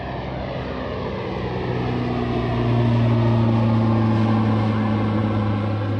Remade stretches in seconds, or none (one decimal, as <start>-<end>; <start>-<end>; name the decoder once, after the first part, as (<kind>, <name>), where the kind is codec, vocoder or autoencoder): none